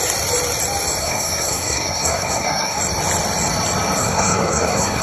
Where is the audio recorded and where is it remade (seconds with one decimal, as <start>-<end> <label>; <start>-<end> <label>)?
0.0-1.0 recorded; 1.0-2.8 remade; 2.8-4.0 recorded; 4.0-5.0 remade

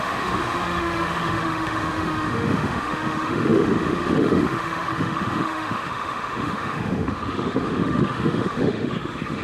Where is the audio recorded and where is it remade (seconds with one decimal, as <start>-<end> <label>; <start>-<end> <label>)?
0.0-9.4 remade